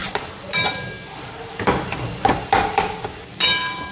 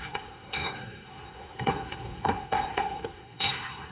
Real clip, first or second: first